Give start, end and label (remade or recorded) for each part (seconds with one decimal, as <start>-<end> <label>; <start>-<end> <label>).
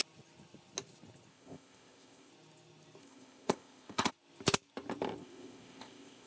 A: 0.0-1.3 recorded; 1.3-2.3 remade; 2.3-3.0 recorded; 3.0-4.1 remade; 4.1-5.2 recorded; 5.2-6.3 remade